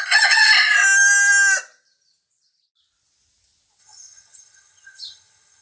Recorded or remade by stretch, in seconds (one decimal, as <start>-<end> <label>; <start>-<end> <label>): 0.0-0.5 remade; 0.5-3.8 recorded; 3.8-5.6 remade